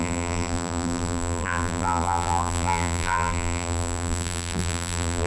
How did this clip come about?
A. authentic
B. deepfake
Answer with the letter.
B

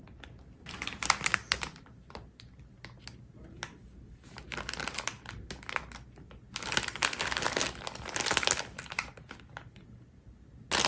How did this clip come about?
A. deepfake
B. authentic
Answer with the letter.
B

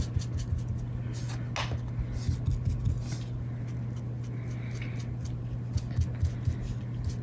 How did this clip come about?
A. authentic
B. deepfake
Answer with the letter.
A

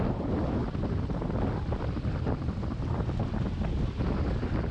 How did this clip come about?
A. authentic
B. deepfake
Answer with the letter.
A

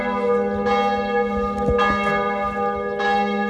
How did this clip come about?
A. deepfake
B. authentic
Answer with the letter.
B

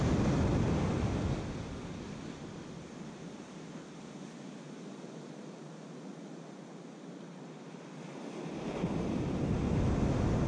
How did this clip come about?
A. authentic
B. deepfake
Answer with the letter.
A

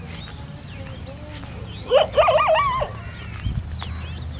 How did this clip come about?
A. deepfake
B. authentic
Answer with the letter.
B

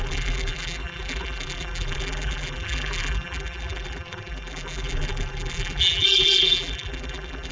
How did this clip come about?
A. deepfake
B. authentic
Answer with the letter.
A